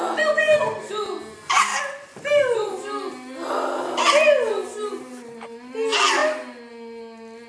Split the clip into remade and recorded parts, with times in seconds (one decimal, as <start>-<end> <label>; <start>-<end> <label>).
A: 0.0-0.4 recorded; 0.4-0.9 remade; 0.9-7.5 recorded